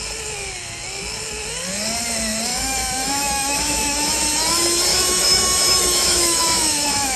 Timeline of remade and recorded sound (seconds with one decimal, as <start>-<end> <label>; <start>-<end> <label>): 0.0-2.5 recorded; 2.5-4.1 remade; 4.1-4.9 recorded; 4.9-7.2 remade